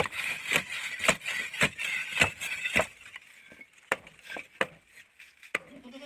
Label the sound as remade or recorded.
recorded